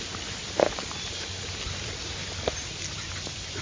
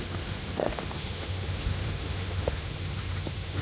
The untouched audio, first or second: first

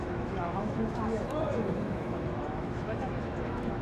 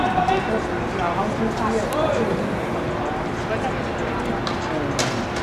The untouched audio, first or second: second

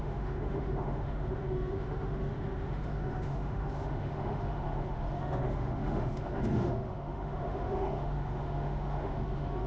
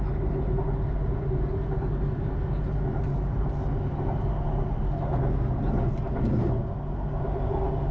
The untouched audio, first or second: second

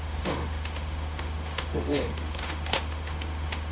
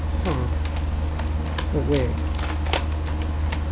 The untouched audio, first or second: second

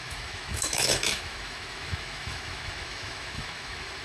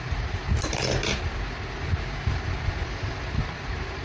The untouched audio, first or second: second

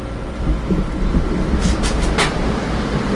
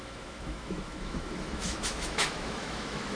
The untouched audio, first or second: first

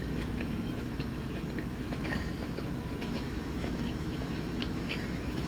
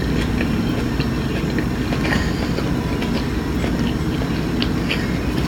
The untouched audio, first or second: second